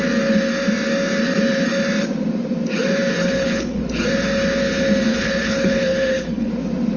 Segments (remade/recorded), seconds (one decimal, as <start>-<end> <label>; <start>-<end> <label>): 0.0-3.2 recorded; 3.2-3.8 remade; 3.8-5.1 recorded; 5.1-6.5 remade; 6.5-7.0 recorded